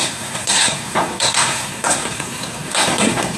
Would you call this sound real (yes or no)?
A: no